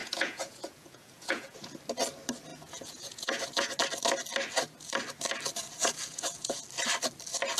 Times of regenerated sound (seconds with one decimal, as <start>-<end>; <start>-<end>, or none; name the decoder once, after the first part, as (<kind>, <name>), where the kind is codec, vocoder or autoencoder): 0.0-1.6 (vocoder, Vocos); 2.5-3.8; 5.8-6.6